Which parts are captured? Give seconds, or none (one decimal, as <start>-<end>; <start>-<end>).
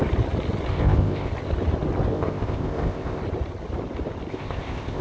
0.0-0.7; 1.3-2.1; 3.2-4.3